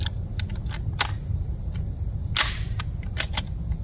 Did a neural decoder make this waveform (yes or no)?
no